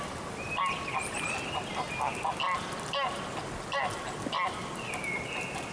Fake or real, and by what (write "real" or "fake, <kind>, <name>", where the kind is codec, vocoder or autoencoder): real